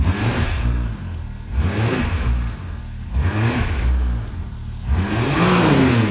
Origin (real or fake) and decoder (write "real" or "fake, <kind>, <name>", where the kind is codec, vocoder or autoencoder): fake, codec, SNAC